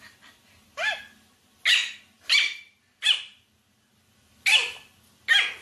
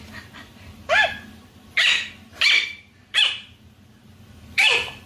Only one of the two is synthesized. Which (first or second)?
second